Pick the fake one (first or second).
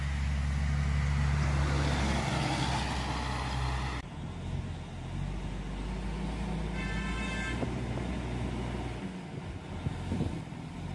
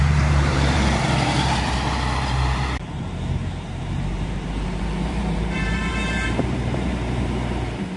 second